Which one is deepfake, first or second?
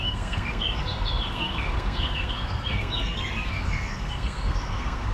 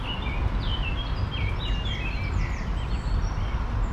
first